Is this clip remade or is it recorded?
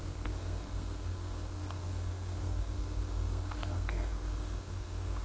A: remade